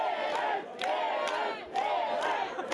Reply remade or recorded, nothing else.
recorded